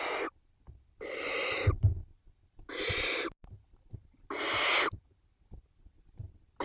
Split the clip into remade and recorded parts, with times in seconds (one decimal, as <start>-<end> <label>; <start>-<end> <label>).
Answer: 0.0-6.6 recorded